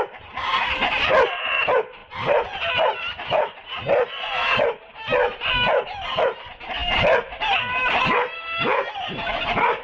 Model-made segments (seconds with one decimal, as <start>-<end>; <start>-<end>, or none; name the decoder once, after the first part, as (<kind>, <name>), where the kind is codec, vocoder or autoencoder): none